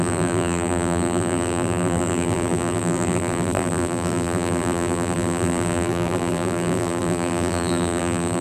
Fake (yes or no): yes